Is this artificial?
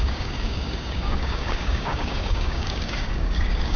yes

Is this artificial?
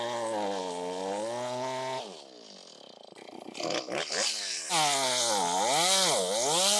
no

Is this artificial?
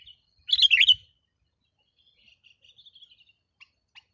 no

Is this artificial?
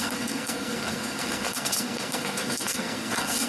yes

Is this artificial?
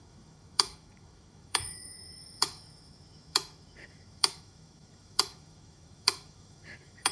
yes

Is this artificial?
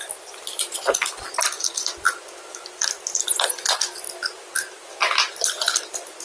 no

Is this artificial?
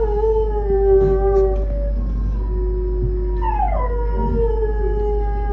no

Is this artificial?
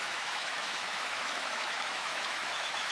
yes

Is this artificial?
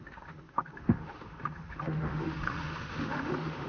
yes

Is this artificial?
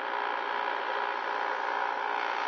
no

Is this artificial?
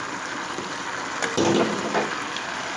no